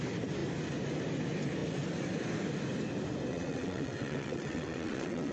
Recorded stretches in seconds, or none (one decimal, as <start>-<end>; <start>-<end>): 0.0-3.3